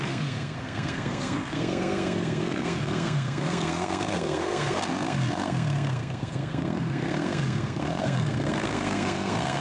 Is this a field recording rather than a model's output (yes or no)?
no